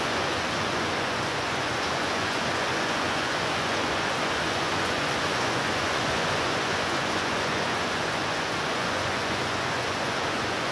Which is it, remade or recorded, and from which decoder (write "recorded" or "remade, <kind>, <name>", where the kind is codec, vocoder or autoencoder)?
remade, vocoder, Vocos